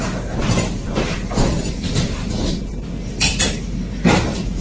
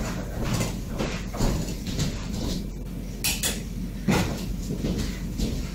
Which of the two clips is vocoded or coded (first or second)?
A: first